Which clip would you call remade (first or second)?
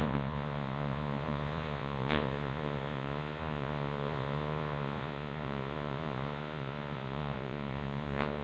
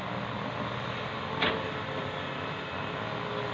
first